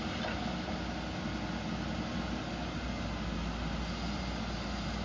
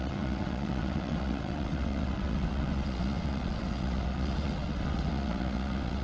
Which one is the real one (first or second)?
first